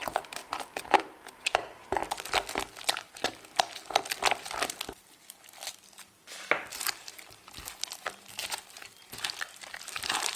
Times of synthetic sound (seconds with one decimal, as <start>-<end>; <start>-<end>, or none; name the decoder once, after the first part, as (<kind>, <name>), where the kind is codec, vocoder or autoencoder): 0.0-0.4 (vocoder, BigVGAN v2); 1.0-2.0; 6.7-10.4